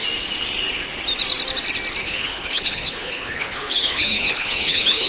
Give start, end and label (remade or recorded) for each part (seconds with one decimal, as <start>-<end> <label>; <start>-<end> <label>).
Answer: 0.0-2.0 recorded; 2.0-5.1 remade